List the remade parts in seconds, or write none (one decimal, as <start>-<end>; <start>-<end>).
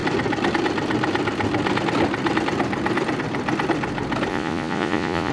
4.3-5.3